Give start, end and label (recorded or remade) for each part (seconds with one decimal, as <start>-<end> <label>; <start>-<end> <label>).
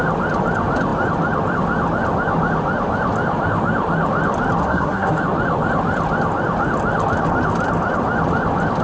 0.0-4.6 recorded; 4.6-5.2 remade; 5.2-8.8 recorded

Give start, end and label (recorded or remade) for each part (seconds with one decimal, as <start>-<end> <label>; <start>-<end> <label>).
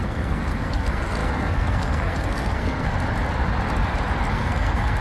0.0-2.9 remade; 2.9-4.3 recorded; 4.3-5.0 remade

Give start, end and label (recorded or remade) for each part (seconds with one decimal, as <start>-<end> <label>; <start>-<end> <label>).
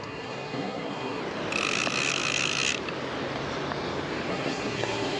0.0-1.2 remade; 1.2-4.3 recorded; 4.3-5.2 remade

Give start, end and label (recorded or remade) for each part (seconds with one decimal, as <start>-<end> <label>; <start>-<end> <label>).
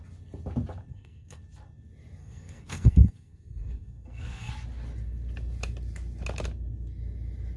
0.0-0.9 recorded; 0.9-1.4 remade; 1.4-2.2 recorded; 2.2-4.5 remade; 4.5-7.6 recorded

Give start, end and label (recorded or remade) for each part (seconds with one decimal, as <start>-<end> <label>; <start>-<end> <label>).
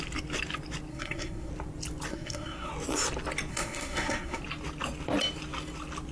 0.0-0.9 recorded; 0.9-1.5 remade; 1.5-2.1 recorded; 2.1-2.7 remade; 2.7-3.5 recorded; 3.5-4.4 remade; 4.4-6.1 recorded